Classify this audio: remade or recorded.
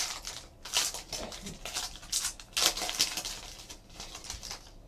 recorded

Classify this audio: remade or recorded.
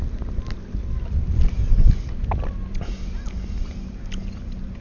recorded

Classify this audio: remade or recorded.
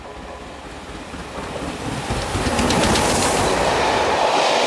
recorded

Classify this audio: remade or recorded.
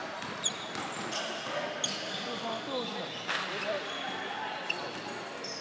recorded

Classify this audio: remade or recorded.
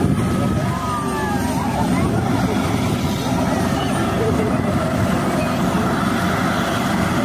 recorded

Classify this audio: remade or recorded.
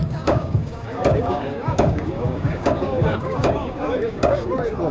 remade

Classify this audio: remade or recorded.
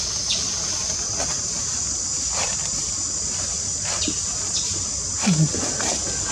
recorded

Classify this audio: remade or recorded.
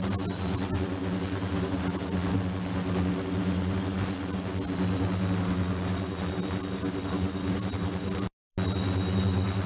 recorded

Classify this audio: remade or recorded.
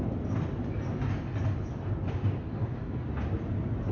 recorded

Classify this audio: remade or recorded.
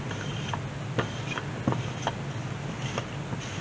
recorded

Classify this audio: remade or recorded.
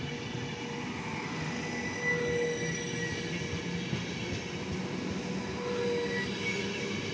recorded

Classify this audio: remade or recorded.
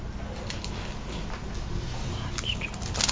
recorded